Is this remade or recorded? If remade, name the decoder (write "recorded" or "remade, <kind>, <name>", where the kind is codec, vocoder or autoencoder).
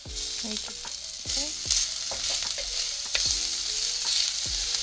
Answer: recorded